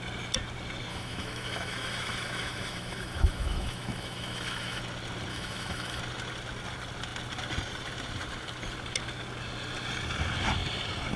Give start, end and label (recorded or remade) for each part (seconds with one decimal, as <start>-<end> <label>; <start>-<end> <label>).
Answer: 0.0-0.9 recorded; 0.9-4.8 remade; 4.8-5.3 recorded; 5.3-6.0 remade; 6.0-11.2 recorded